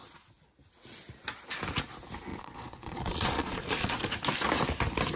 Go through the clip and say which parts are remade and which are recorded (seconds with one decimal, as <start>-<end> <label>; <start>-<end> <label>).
0.0-2.3 recorded; 2.3-4.1 remade; 4.1-5.2 recorded